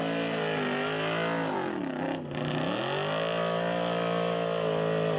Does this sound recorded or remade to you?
recorded